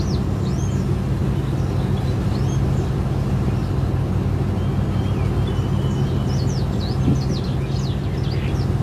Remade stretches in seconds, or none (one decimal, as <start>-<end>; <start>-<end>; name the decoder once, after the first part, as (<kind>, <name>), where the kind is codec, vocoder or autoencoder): none